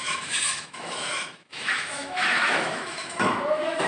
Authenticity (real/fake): fake